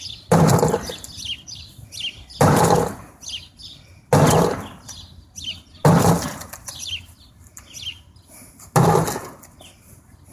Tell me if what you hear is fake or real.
real